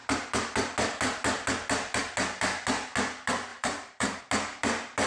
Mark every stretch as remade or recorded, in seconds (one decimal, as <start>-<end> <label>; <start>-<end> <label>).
0.0-3.5 recorded; 3.5-4.2 remade; 4.2-5.1 recorded